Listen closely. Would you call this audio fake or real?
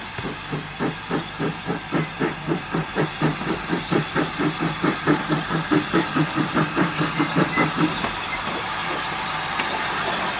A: fake